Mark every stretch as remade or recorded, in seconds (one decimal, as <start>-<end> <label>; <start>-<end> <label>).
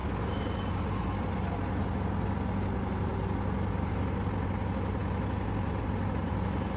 0.0-6.8 recorded